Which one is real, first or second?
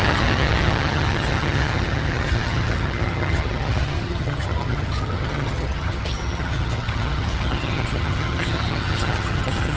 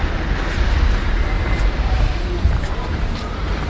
second